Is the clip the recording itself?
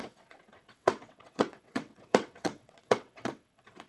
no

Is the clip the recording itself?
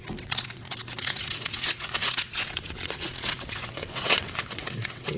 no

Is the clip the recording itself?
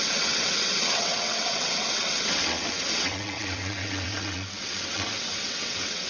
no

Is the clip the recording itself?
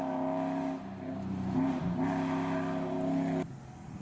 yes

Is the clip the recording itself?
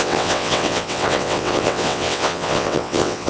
no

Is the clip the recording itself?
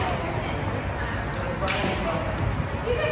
yes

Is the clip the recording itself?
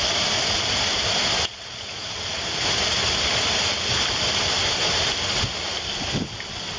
yes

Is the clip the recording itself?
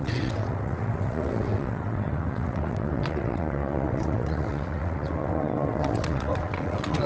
no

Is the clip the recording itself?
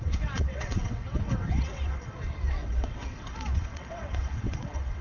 no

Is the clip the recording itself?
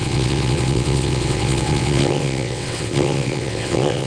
no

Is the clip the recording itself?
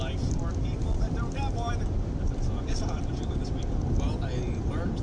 yes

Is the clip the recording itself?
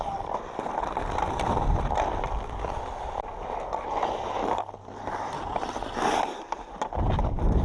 yes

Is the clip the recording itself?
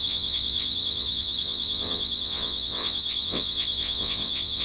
no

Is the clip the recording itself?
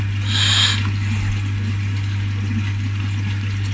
yes